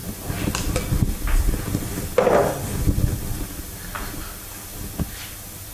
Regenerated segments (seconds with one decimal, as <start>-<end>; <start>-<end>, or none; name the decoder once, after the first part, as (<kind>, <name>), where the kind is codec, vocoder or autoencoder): none